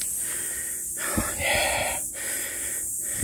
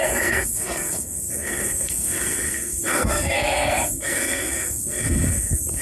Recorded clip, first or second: first